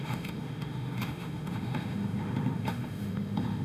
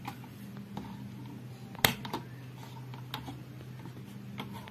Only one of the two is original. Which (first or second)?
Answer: second